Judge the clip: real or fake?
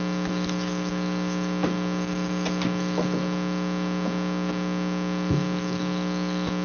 real